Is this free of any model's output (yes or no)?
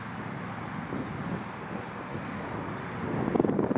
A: yes